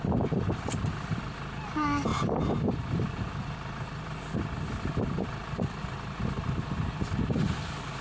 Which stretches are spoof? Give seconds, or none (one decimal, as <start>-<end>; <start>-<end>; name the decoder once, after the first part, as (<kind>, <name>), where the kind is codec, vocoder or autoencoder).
none